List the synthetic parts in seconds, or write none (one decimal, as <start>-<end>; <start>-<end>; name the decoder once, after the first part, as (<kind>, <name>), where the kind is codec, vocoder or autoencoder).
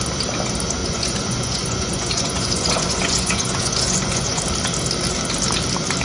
0.8-4.4 (vocoder, Vocos)